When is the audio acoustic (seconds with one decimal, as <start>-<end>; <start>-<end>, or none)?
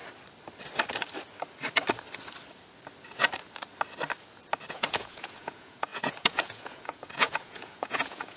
0.0-4.7